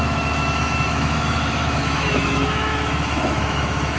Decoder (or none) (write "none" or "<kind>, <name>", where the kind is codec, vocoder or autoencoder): autoencoder, DAC-VAE